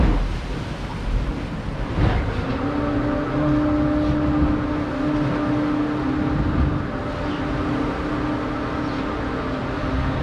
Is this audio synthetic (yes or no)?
no